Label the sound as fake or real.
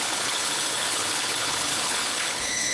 fake